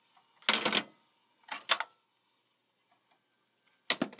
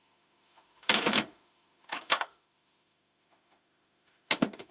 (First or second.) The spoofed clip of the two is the second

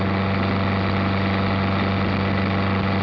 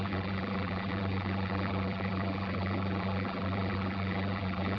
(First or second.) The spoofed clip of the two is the second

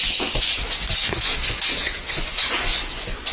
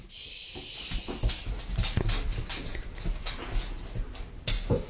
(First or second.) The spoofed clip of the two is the first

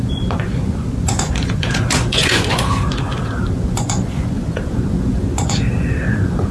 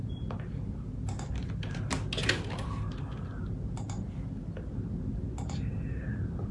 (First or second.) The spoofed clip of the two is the first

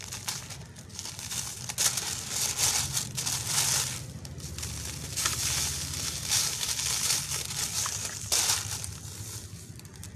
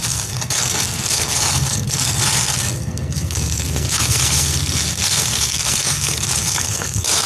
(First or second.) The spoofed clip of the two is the second